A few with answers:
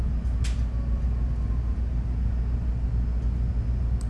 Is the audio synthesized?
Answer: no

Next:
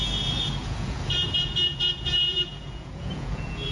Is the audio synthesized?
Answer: yes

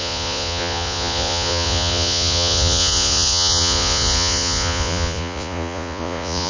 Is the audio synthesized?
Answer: yes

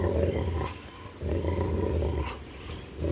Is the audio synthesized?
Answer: no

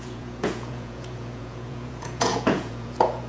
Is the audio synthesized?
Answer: yes